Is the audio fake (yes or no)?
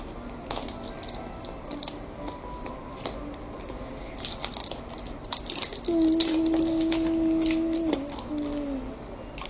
no